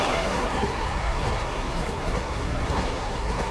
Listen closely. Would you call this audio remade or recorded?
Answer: remade